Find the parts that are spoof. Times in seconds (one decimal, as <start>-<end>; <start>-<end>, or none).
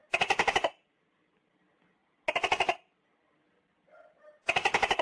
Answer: none